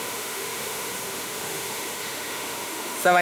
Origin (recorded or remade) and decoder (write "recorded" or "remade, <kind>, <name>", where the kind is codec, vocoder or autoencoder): remade, autoencoder, DAC-VAE